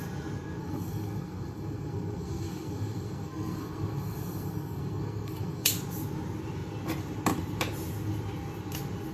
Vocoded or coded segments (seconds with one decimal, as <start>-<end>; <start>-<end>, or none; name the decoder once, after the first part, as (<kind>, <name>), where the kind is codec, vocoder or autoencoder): 0.6-5.7 (codec, SNAC)